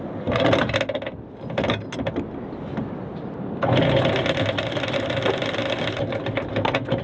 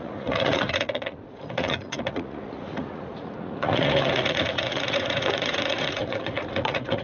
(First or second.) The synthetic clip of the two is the second